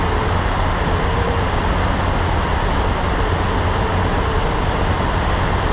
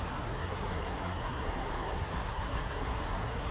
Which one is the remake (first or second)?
second